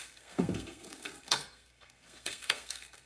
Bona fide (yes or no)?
no